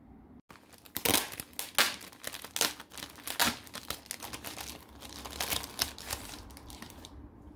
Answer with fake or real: real